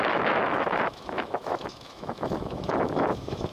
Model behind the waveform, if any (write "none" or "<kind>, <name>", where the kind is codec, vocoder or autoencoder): autoencoder, DAC-VAE